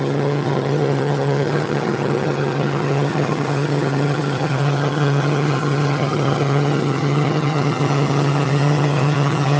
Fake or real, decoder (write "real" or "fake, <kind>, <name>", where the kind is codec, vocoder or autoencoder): fake, vocoder, HiFi-GAN